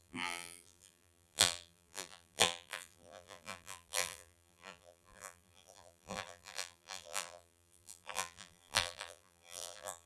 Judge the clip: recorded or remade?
remade